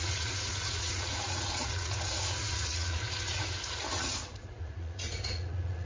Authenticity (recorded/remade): remade